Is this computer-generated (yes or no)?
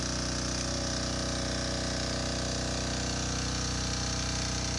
no